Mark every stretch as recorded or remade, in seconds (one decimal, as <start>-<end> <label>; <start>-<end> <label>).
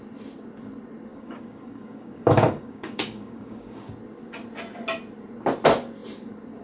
0.0-1.1 recorded; 1.1-3.9 remade; 3.9-6.6 recorded